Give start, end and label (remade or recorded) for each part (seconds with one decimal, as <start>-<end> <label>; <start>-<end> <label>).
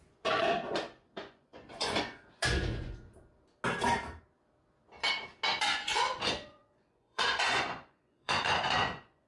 0.0-3.1 remade; 3.1-5.6 recorded; 5.6-9.3 remade